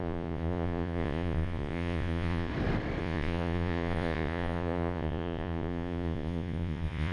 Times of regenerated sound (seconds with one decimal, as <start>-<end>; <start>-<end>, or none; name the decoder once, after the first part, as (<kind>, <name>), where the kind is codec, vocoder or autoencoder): 0.0-2.5 (vocoder, Vocos); 3.0-7.1